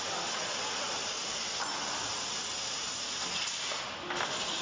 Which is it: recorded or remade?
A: recorded